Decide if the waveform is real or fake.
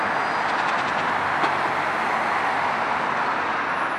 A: real